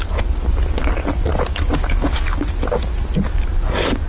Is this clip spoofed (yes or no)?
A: no